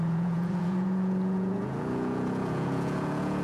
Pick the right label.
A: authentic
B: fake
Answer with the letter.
B